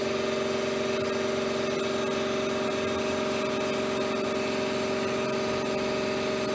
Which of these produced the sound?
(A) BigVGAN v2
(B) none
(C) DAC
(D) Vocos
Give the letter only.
B